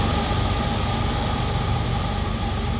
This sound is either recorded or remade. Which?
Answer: recorded